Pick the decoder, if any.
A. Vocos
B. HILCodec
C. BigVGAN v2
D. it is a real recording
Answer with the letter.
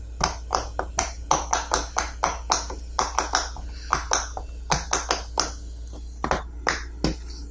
D